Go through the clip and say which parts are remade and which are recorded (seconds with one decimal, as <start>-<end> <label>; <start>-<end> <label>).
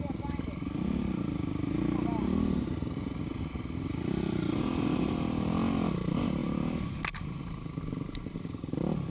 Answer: 0.0-9.1 recorded